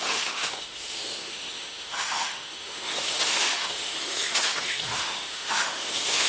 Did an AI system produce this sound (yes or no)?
yes